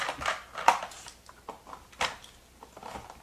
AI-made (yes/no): no